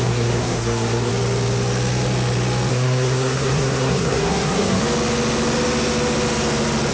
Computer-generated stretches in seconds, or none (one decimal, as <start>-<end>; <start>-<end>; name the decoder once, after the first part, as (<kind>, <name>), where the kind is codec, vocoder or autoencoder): 0.0-1.1 (codec, SNAC); 2.7-4.8